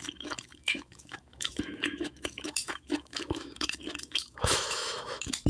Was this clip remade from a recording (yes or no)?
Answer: yes